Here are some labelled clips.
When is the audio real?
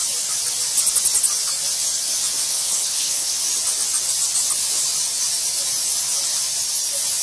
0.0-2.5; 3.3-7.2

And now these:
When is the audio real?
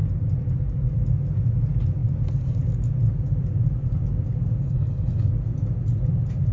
0.0-4.6; 5.3-6.5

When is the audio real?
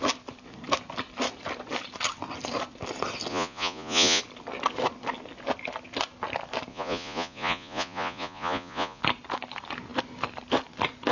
0.0-3.3; 4.2-6.7; 9.0-11.1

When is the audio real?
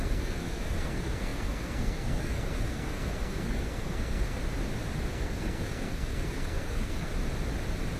4.4-5.1; 7.1-8.0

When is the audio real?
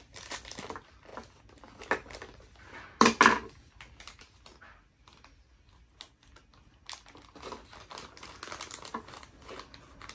0.0-10.1